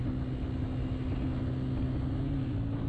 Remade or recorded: recorded